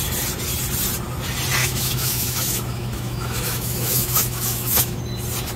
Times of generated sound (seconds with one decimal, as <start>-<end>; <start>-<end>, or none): 1.6-5.0